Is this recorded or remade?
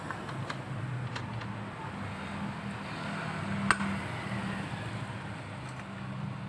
recorded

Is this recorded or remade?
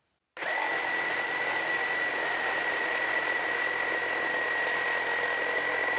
recorded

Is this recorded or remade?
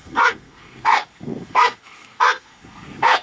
remade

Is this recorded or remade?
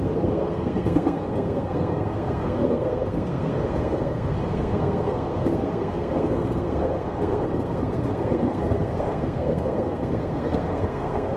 remade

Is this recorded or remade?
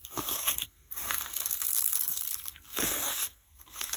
remade